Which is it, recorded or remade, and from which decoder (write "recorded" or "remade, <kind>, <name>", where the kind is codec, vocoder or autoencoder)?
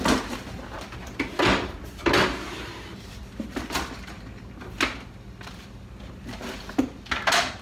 recorded